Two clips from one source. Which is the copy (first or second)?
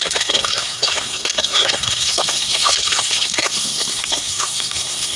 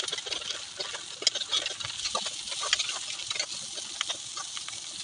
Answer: first